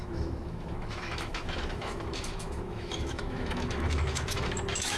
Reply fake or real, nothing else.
fake